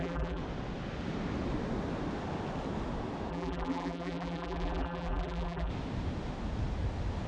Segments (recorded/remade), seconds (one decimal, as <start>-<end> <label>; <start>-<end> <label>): 0.0-0.4 remade; 0.4-3.3 recorded; 3.3-5.7 remade; 5.7-7.3 recorded